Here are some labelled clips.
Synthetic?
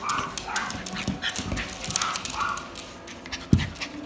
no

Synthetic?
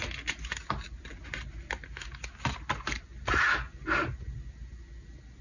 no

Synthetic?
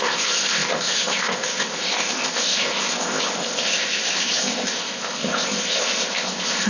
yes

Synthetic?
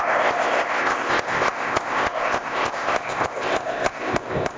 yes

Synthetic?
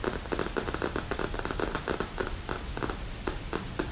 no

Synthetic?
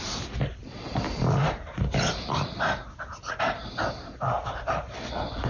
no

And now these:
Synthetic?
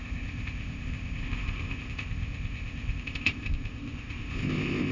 yes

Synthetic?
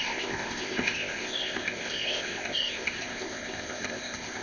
yes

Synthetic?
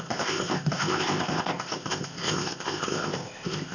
yes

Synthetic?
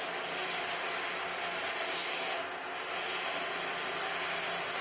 no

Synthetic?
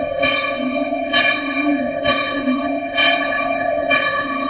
yes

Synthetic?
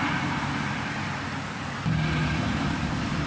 no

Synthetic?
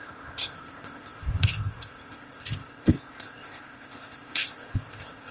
yes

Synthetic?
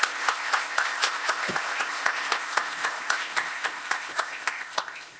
yes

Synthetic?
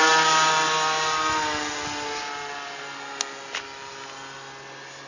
no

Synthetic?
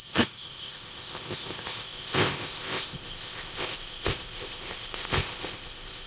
yes